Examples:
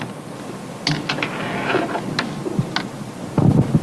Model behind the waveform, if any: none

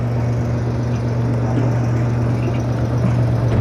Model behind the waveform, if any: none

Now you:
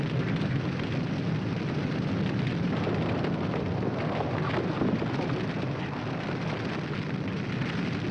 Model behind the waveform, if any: none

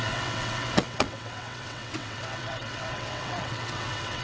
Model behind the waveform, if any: vocoder, WaveNeXt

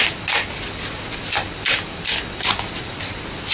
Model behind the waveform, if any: none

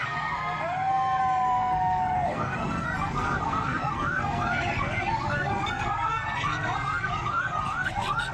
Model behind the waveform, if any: codec, SNAC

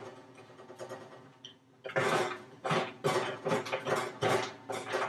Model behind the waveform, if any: none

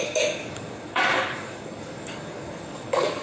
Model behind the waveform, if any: codec, DAC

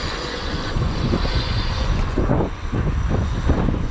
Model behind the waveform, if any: vocoder, Vocos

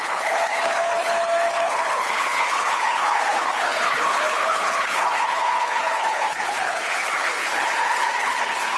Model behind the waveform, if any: codec, HILCodec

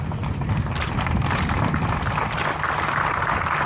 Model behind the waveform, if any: vocoder, BigVGAN v2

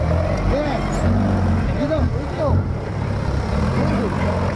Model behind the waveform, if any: none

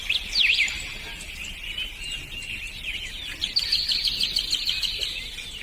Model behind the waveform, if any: none